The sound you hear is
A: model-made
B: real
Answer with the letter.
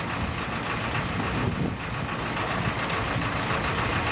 B